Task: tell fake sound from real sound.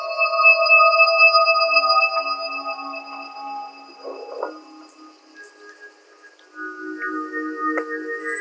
real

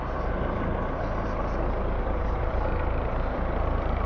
fake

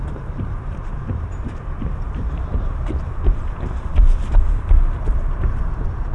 fake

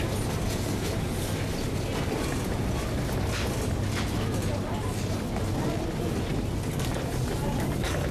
real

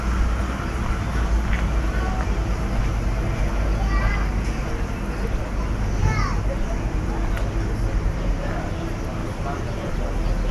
real